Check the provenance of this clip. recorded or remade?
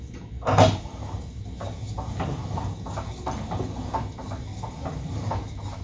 recorded